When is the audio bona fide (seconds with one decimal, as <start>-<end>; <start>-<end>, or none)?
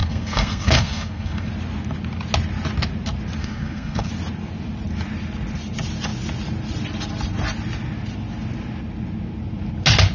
1.5-3.4; 4.1-10.1